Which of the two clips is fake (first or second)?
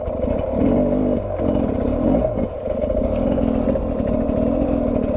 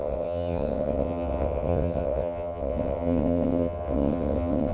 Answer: second